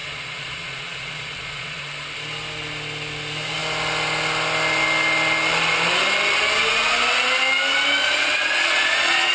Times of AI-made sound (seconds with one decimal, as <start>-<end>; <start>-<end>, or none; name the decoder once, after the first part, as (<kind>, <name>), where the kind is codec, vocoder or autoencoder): 0.0-1.8 (vocoder, Vocos); 8.0-9.3